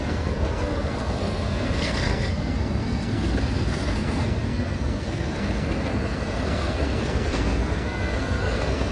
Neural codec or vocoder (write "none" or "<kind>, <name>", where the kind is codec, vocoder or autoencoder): codec, SNAC